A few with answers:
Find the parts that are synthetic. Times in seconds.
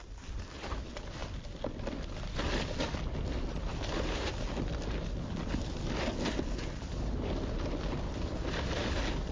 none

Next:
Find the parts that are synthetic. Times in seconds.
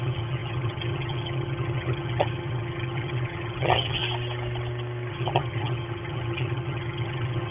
0.0-4.0 (vocoder, HiFi-GAN); 5.1-7.5